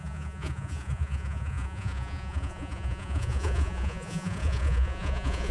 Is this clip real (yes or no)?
no